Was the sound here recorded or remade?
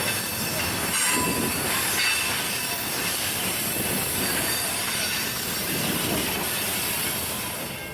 recorded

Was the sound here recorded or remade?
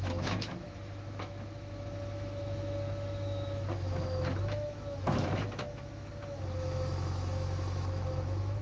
remade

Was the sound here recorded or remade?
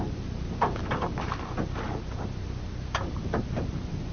recorded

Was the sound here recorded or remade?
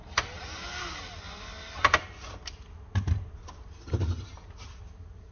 recorded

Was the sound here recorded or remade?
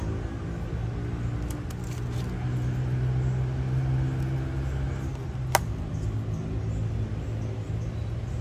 recorded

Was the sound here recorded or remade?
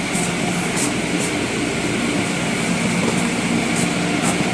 recorded